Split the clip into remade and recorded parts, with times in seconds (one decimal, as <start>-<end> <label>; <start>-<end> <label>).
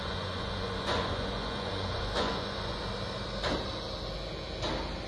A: 0.0-2.8 remade; 2.8-5.1 recorded